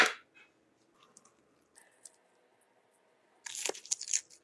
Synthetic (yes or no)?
no